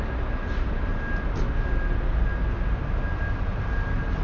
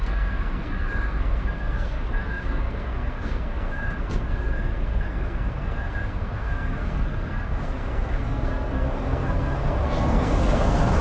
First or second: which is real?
first